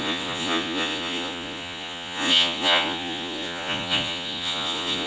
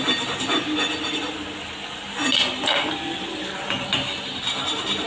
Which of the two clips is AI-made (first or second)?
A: first